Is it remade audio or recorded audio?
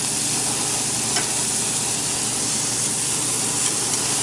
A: recorded